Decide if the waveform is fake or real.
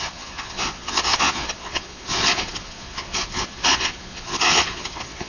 fake